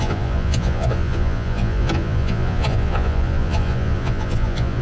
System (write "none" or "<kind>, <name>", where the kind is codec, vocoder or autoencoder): vocoder, Vocos